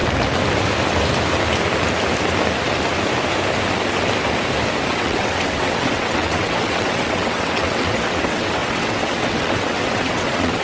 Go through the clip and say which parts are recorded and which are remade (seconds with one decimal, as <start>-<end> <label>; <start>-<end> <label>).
0.0-4.9 recorded; 4.9-10.6 remade